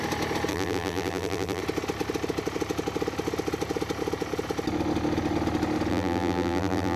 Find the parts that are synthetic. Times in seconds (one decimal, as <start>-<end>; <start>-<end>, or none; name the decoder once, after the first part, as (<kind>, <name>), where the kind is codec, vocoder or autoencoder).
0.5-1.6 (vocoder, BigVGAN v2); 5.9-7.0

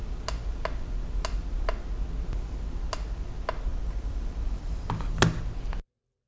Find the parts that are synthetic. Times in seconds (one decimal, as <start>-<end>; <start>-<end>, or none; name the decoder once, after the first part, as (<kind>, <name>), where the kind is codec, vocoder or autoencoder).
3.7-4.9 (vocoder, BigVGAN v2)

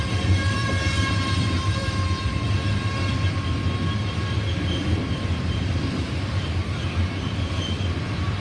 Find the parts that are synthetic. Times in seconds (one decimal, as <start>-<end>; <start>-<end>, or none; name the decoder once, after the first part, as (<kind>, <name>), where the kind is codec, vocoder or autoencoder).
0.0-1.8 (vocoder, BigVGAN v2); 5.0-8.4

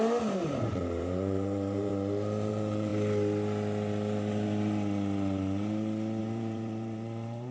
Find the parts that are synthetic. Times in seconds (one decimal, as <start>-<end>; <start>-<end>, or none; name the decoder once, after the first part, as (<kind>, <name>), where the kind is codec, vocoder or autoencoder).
0.0-1.9 (vocoder, BigVGAN v2); 2.5-2.9; 6.2-7.5

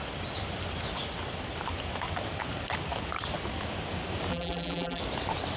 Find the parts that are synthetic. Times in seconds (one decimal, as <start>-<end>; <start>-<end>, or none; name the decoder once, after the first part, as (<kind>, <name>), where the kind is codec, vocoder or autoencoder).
4.3-5.0 (vocoder, BigVGAN v2)